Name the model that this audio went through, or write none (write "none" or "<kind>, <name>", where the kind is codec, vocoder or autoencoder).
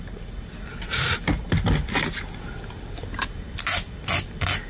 none